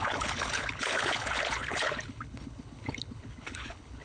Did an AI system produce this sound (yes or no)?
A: yes